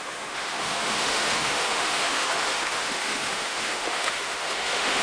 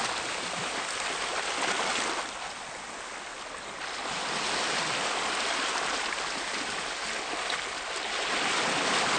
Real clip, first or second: second